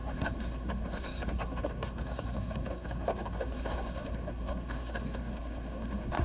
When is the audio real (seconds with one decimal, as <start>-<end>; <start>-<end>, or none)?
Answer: none